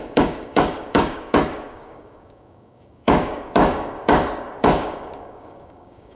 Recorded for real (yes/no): no